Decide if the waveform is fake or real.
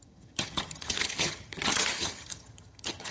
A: fake